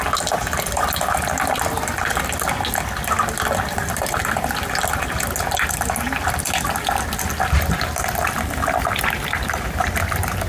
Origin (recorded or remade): recorded